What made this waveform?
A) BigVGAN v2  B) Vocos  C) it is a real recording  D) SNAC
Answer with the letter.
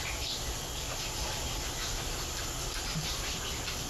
C